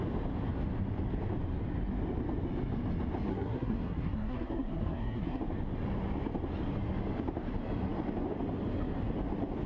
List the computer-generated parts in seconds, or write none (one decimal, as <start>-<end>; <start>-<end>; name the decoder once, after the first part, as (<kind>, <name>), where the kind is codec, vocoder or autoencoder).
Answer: 3.3-5.4 (codec, SNAC)